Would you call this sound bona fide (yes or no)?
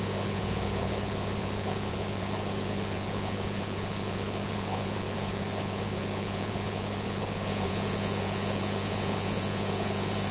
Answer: no